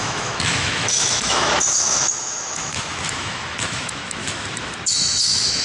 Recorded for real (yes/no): no